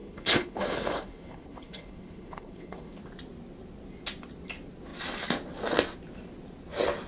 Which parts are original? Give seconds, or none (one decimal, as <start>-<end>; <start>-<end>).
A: 3.0-7.1